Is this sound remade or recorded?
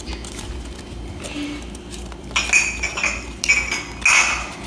recorded